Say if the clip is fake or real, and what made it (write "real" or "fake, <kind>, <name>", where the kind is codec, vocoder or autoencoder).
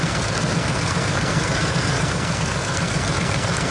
fake, codec, SNAC